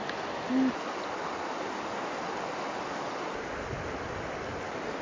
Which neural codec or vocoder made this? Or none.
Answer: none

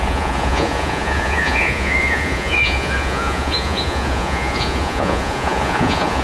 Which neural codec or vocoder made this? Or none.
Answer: vocoder, Vocos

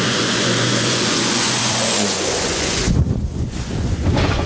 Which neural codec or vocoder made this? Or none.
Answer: vocoder, Vocos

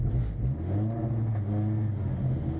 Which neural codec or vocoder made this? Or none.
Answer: none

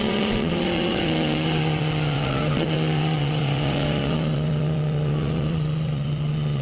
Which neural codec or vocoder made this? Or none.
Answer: vocoder, WaveNeXt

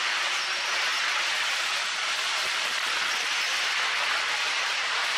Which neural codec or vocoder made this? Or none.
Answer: none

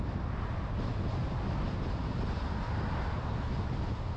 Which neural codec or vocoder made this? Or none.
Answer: none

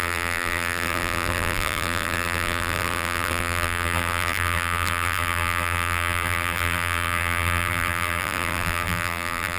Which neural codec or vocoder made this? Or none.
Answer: vocoder, BigVGAN v2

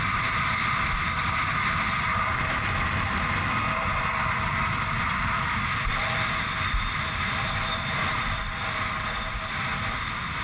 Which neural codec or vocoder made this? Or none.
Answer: none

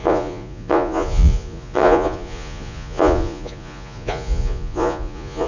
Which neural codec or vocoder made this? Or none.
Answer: vocoder, Vocos